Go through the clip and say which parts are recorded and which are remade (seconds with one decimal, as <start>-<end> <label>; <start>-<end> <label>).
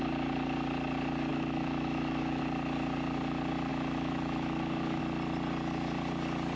0.0-1.3 recorded; 1.3-2.4 remade; 2.4-3.7 recorded; 3.7-5.0 remade; 5.0-6.6 recorded